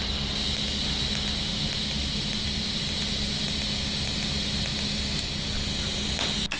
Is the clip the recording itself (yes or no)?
yes